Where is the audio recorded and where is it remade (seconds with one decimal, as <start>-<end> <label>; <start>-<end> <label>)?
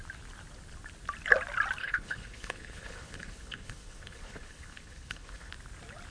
0.0-1.8 recorded; 1.8-5.5 remade; 5.5-6.1 recorded